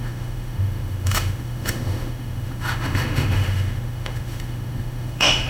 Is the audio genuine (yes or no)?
no